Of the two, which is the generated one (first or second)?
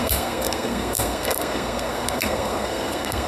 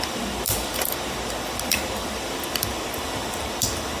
first